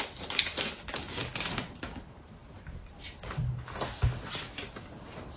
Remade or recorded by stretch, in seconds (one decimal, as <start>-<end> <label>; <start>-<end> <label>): 0.0-5.4 recorded